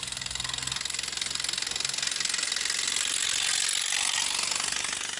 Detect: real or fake real